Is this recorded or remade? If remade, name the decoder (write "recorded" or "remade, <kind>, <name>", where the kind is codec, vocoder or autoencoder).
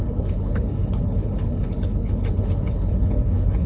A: remade, codec, HILCodec